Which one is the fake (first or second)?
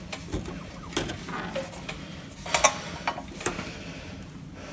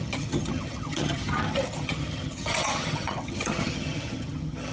second